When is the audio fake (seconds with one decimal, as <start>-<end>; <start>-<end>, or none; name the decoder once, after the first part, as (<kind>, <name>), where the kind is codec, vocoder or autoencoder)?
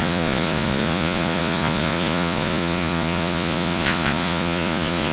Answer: 0.0-5.1 (vocoder, Vocos)